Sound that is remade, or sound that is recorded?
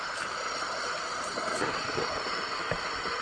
recorded